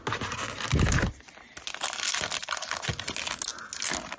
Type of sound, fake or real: real